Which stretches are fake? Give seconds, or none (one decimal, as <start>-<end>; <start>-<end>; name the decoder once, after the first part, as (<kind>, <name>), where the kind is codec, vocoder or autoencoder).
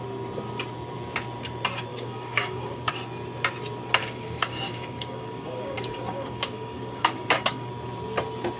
1.9-2.9 (codec, DAC); 4.0-7.7